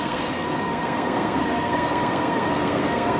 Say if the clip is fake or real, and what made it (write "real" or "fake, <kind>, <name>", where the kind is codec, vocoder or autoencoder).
fake, codec, SNAC